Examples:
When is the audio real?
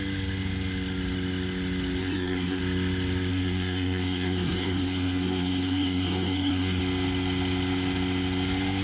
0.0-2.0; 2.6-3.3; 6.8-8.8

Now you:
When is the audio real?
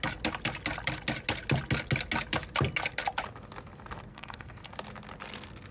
0.0-4.1; 4.7-5.7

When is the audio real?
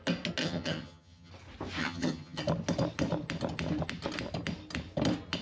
0.0-0.4; 1.3-1.8; 2.4-5.4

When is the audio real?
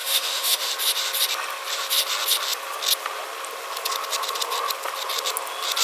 0.7-5.8